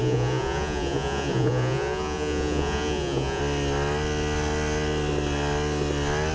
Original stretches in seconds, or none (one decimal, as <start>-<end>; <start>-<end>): 3.4-6.3